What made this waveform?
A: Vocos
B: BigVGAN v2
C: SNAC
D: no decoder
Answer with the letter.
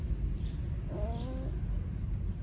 D